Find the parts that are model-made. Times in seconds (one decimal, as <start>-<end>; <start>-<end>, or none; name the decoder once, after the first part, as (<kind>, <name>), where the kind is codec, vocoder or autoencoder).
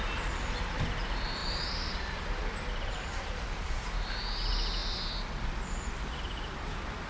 1.4-3.8 (vocoder, BigVGAN v2)